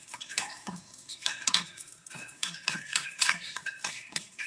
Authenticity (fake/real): fake